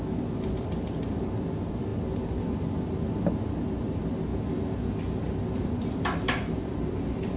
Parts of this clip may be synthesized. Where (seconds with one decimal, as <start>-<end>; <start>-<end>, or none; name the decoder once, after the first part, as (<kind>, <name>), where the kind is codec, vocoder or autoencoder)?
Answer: 4.3-7.4 (vocoder, BigVGAN v2)